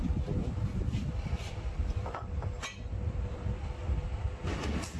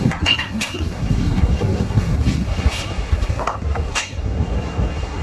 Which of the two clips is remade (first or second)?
second